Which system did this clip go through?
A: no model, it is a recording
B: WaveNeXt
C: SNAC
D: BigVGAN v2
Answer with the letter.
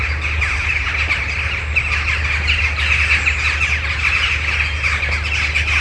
A